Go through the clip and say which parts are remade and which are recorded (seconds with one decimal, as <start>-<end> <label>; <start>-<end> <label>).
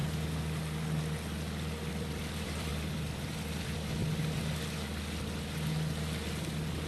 0.0-1.9 recorded; 1.9-4.0 remade; 4.0-6.9 recorded